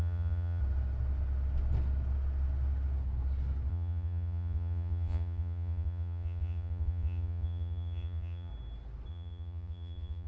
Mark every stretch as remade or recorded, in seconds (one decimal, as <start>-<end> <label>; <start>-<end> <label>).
0.0-0.6 remade; 0.6-3.7 recorded; 3.7-8.5 remade; 8.5-9.1 recorded; 9.1-10.3 remade